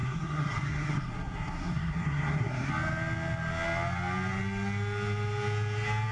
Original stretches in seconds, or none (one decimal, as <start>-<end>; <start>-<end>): 2.7-6.1